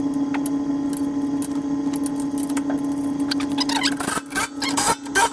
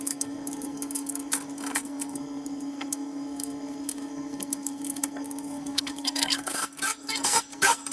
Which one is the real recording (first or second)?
first